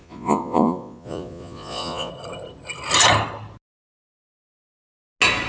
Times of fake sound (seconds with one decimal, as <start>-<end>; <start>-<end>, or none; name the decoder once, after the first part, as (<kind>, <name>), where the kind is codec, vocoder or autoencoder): 0.0-2.1 (vocoder, Vocos)